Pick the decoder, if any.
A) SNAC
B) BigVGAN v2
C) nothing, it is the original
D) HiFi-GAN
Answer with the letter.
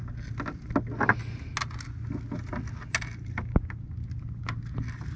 C